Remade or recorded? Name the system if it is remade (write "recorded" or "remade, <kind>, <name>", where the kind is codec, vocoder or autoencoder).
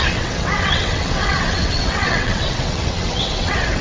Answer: remade, vocoder, WaveNeXt